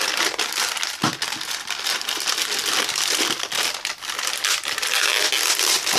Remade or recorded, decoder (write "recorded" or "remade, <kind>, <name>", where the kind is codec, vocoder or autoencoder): recorded